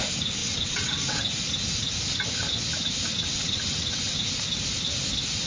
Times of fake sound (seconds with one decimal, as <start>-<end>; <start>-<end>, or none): 0.4-1.4; 3.3-4.2

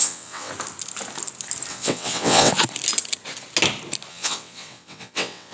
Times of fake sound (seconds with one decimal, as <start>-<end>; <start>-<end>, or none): 0.0-0.5; 1.7-2.5; 4.1-5.5